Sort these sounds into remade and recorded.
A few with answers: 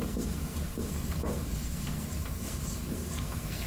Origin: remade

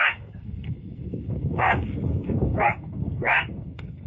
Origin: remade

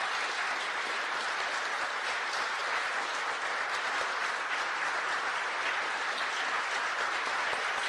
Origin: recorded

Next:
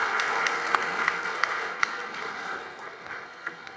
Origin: remade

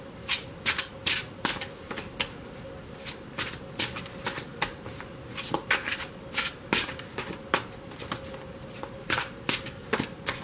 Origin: recorded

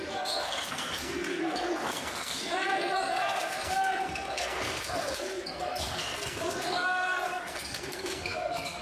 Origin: remade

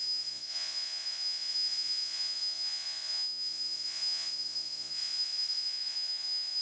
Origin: remade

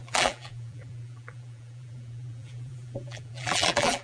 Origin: remade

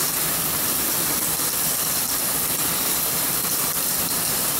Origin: remade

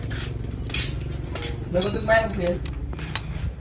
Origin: recorded